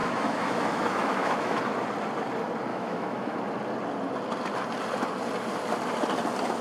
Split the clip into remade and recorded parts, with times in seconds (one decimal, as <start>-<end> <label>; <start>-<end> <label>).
0.0-1.6 remade; 1.6-2.7 recorded; 2.7-3.4 remade; 3.4-6.6 recorded